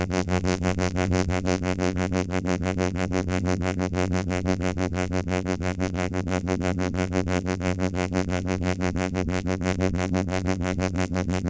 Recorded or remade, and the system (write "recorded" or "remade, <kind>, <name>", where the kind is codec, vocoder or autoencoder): remade, vocoder, BigVGAN v2